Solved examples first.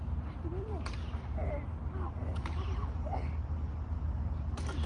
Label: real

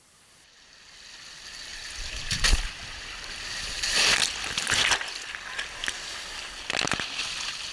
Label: real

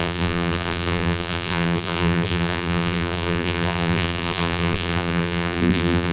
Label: fake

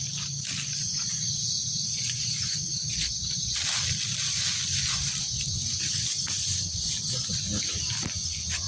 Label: real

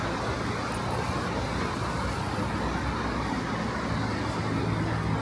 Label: real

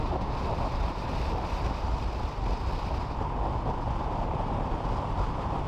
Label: fake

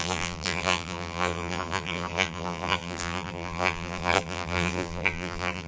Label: fake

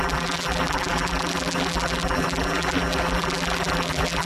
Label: fake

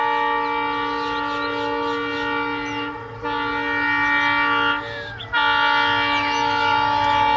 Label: real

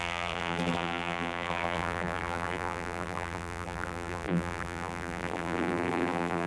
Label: fake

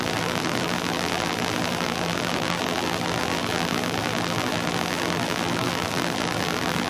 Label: fake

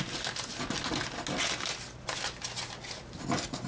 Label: real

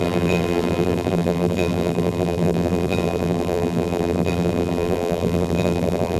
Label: fake